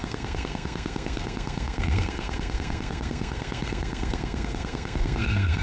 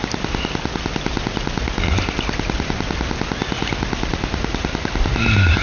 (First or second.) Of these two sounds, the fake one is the first